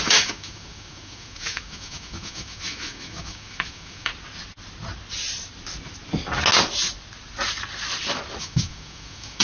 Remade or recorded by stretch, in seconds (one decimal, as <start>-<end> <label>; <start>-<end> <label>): 0.0-4.1 remade; 4.1-8.4 recorded; 8.4-9.4 remade